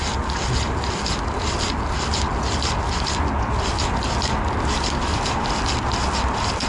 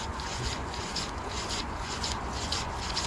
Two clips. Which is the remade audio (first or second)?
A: second